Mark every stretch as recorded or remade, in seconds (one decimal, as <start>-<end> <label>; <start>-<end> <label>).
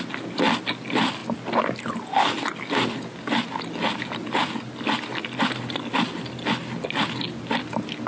0.0-8.1 recorded